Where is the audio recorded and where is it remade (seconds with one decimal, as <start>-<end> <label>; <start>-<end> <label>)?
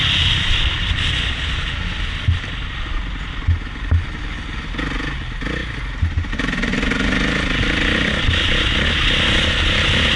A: 0.0-10.2 recorded